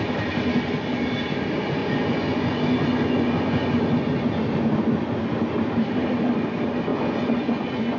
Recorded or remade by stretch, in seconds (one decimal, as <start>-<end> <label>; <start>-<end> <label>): 0.0-1.8 recorded; 1.8-4.3 remade; 4.3-6.9 recorded; 6.9-8.0 remade